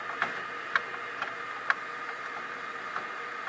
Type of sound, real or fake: real